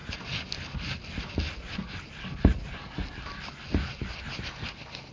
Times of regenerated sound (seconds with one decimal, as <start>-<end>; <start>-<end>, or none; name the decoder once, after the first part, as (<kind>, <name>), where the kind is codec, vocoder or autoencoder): none